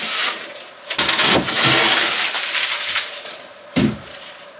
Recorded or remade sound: recorded